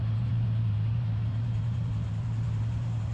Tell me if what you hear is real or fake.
fake